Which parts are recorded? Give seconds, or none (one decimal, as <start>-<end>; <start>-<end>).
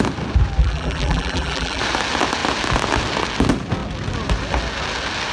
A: 0.0-0.6; 1.8-5.3